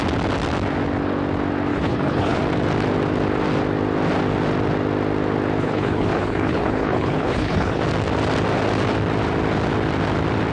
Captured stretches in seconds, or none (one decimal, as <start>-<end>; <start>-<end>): 0.0-1.7; 2.4-5.6; 7.8-10.5